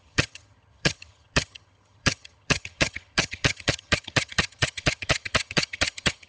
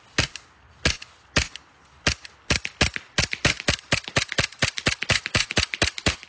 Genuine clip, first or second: second